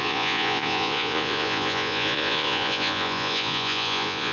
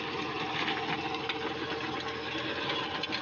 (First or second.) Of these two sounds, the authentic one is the second